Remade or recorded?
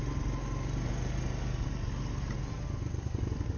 recorded